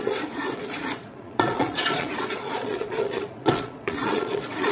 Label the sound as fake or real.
fake